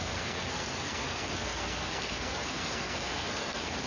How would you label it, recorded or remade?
remade